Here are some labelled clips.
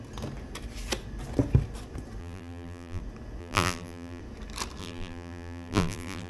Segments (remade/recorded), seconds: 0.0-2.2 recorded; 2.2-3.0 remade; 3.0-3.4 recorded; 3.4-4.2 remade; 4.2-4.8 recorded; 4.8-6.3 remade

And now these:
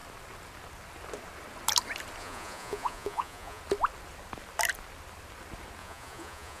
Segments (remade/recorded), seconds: 0.0-2.2 recorded; 2.2-3.6 remade; 3.6-5.8 recorded; 5.8-6.6 remade

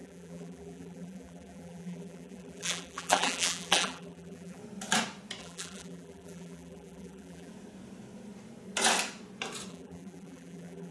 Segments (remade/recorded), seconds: 0.0-4.6 remade; 4.6-5.4 recorded; 5.4-7.5 remade; 7.5-9.7 recorded; 9.7-10.9 remade